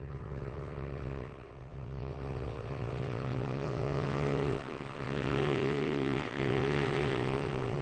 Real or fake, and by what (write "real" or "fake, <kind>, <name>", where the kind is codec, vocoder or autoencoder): fake, vocoder, WaveNeXt